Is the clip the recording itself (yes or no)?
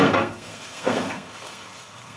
no